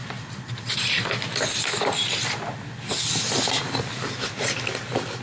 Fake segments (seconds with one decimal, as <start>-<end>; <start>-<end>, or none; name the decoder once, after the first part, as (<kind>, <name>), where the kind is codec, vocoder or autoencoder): none